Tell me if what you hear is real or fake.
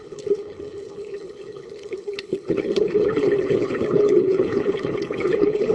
fake